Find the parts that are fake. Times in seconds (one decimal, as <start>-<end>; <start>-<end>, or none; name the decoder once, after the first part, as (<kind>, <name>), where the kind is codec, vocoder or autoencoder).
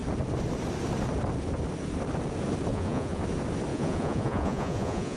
2.7-3.2 (vocoder, Vocos); 3.7-5.2